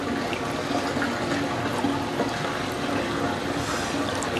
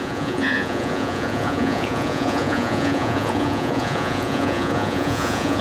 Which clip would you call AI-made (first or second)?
second